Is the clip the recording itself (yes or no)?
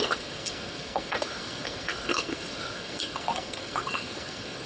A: no